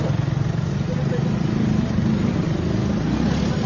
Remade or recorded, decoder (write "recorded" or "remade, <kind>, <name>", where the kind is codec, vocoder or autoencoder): recorded